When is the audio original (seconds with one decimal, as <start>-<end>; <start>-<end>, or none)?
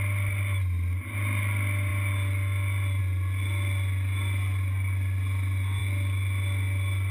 0.0-7.1